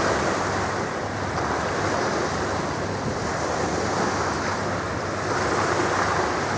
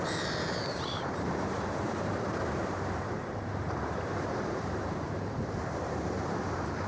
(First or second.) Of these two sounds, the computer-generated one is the second